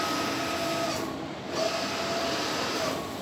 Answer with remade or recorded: recorded